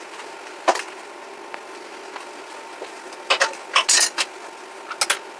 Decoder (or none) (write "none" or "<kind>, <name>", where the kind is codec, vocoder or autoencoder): none